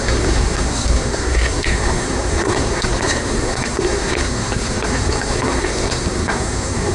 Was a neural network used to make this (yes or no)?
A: yes